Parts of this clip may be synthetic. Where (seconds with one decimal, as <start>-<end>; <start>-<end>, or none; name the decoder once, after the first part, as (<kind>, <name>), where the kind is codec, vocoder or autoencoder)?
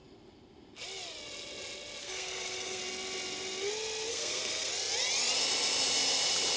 2.0-2.8 (codec, SNAC); 4.1-4.7